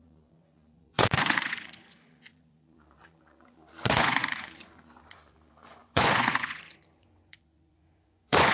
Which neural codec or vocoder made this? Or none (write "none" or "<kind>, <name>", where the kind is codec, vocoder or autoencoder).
vocoder, Vocos